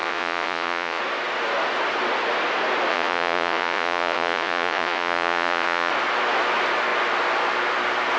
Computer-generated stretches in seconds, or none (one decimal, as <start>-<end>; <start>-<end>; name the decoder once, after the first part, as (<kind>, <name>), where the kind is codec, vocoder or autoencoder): 0.0-1.0 (vocoder, Vocos); 2.9-5.9